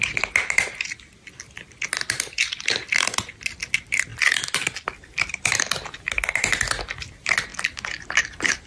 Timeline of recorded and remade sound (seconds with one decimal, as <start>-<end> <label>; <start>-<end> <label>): 0.0-4.1 recorded; 4.1-5.6 remade; 5.6-8.7 recorded